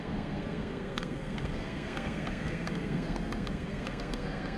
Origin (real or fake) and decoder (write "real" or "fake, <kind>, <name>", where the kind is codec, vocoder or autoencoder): fake, codec, SNAC